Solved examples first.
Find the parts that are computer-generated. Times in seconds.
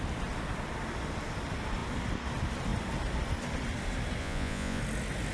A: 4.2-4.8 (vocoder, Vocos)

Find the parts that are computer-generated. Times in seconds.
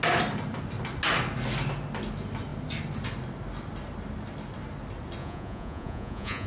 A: 5.2-6.5 (vocoder, Vocos)